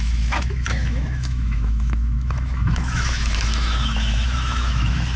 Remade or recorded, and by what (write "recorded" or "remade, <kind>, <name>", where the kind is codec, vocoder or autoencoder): remade, autoencoder, DAC-VAE